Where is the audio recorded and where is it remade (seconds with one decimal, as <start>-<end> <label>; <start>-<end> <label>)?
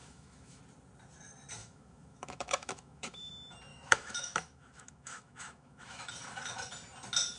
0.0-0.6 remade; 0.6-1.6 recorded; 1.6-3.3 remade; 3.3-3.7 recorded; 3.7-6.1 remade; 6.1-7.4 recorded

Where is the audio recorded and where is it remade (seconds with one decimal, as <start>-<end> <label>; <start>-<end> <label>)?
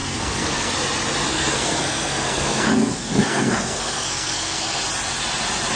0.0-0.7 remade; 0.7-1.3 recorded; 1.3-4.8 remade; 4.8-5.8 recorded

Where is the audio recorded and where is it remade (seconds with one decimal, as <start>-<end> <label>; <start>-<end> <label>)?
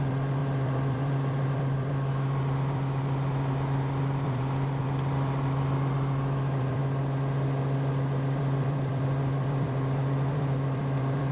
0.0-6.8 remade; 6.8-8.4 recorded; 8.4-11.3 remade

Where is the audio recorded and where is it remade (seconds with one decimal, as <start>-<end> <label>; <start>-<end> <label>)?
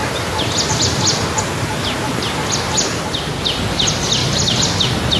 0.0-5.2 recorded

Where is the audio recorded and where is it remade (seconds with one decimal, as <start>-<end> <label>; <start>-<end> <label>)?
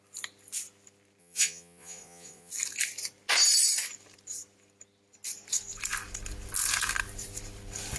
0.0-1.2 recorded; 1.2-2.5 remade; 2.5-8.0 recorded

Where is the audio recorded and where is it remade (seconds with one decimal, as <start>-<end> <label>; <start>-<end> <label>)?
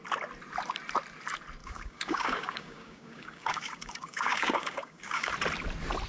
0.0-1.6 recorded; 1.6-5.3 remade; 5.3-6.1 recorded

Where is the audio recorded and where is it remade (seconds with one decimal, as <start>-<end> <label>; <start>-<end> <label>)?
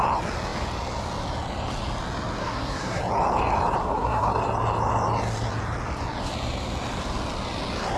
0.0-2.4 recorded; 2.4-3.0 remade; 3.0-3.8 recorded; 3.8-4.3 remade; 4.3-8.0 recorded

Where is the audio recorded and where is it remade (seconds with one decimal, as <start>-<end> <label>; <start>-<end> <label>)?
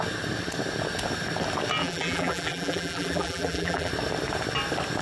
0.0-1.8 recorded; 1.8-3.9 remade; 3.9-5.0 recorded